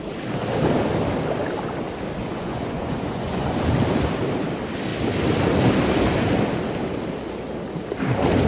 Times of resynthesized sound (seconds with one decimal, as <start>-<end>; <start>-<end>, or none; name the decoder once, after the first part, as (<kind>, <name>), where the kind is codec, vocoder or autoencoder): 2.2-3.6 (vocoder, Vocos)